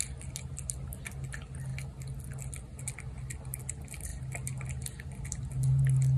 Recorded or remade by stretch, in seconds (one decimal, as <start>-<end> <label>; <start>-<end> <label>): 0.0-6.2 recorded